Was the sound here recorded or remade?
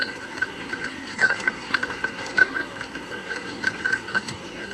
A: remade